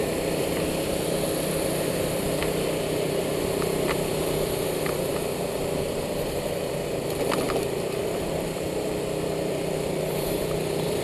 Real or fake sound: fake